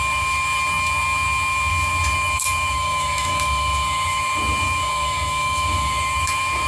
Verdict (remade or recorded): remade